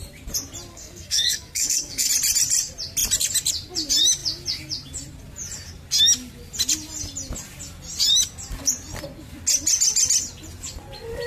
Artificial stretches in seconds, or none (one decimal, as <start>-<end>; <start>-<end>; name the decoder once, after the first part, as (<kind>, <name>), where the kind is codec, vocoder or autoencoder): 0.7-2.1 (codec, SNAC)